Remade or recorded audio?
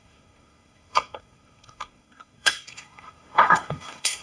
remade